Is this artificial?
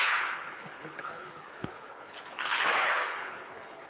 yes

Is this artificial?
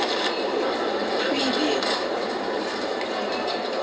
yes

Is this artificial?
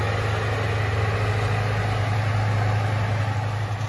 no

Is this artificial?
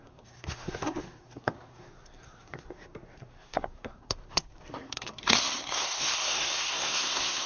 yes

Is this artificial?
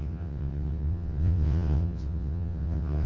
yes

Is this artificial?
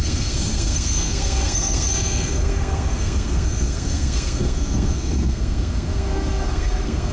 yes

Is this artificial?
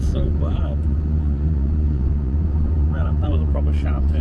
yes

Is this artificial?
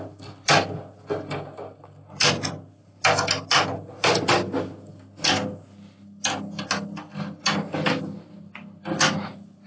no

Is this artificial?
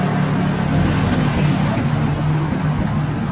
no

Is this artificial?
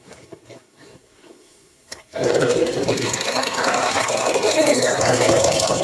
yes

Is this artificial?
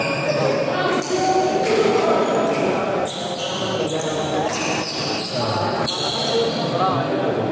no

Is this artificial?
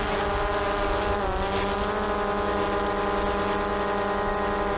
no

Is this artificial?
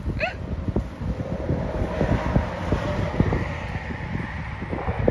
no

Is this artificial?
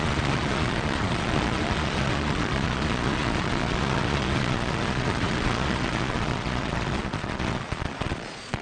yes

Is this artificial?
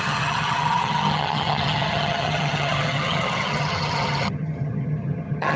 yes